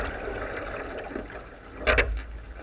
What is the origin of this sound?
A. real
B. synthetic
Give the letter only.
A